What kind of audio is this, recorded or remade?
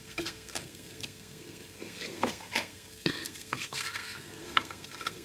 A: remade